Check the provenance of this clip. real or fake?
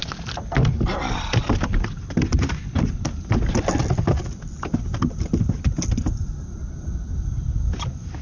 real